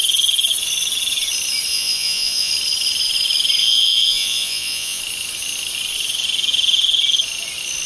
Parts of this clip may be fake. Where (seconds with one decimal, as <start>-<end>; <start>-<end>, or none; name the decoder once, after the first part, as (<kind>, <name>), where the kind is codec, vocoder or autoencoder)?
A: 1.7-2.5 (vocoder, Vocos); 3.6-5.0